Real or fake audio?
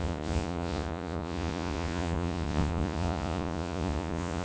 fake